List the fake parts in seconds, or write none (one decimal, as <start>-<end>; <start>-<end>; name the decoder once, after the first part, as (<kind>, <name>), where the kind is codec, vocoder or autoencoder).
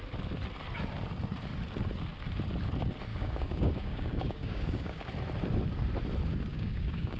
3.1-5.1 (codec, DAC); 6.5-7.2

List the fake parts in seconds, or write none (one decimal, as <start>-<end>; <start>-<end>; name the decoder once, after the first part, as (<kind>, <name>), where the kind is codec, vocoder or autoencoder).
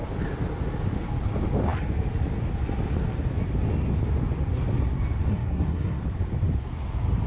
5.3-6.0 (codec, SNAC)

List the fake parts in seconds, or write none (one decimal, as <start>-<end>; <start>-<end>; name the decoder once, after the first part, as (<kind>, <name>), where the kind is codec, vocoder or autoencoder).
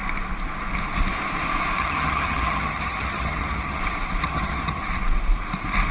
1.8-3.8 (vocoder, HiFi-GAN); 4.2-4.8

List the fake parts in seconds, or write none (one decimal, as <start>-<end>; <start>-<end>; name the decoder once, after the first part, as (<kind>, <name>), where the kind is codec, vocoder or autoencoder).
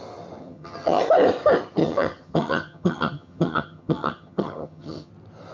0.4-1.0 (vocoder, HiFi-GAN); 1.8-5.1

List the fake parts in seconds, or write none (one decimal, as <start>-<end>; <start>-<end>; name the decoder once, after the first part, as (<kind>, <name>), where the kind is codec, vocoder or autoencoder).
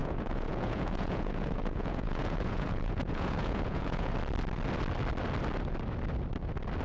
0.0-4.1 (vocoder, Vocos)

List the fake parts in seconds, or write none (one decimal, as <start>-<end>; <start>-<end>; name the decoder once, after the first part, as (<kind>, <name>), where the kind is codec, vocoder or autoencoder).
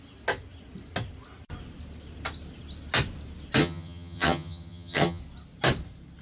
3.6-5.2 (vocoder, HiFi-GAN)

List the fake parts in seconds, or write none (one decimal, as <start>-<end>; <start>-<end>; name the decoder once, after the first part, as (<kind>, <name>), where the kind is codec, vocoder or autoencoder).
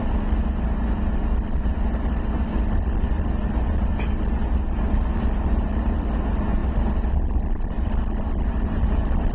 none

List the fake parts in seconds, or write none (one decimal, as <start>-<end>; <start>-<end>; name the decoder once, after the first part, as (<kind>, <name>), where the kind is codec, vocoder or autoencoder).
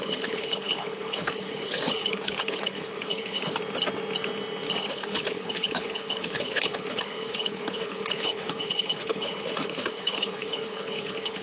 0.0-3.6 (codec, HILCodec); 4.9-11.4